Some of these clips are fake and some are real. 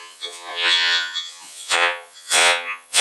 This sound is fake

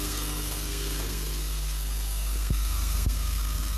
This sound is fake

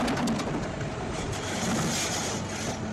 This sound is real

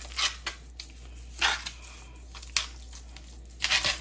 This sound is real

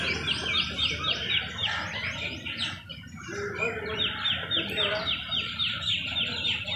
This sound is real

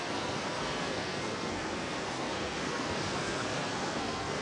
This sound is fake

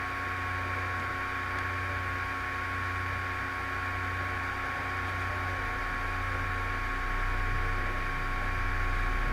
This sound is real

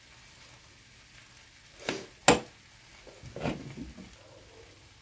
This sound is real